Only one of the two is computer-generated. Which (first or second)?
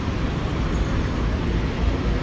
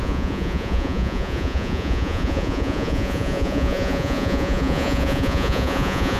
second